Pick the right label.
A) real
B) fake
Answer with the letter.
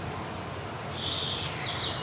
A